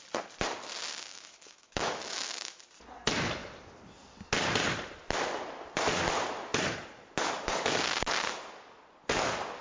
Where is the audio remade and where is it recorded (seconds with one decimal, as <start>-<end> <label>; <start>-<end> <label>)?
0.0-1.1 recorded; 1.1-2.6 remade; 2.6-9.6 recorded